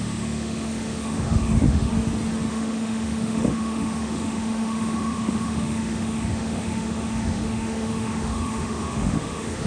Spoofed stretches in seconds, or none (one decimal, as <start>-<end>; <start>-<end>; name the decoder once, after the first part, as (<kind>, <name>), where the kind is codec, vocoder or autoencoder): 0.0-1.9 (autoencoder, DAC-VAE); 2.5-9.7